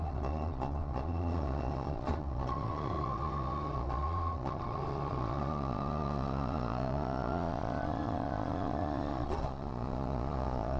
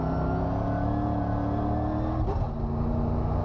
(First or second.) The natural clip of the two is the second